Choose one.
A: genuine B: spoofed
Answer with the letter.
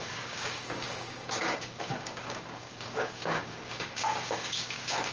B